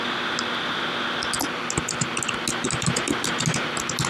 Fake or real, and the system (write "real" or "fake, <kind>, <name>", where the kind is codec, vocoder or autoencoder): real